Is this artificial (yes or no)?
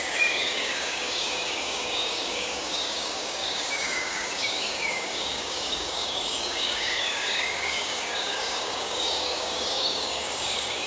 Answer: yes